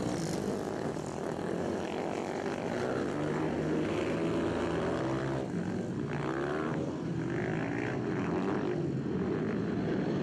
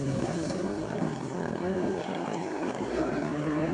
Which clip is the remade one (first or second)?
second